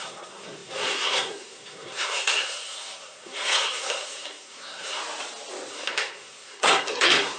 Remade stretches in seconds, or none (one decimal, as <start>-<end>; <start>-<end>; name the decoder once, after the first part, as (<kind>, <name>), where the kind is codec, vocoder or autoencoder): 0.0-5.0 (codec, SNAC); 5.7-7.4